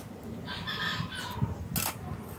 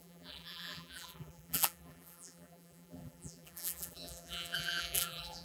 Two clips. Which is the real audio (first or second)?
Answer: first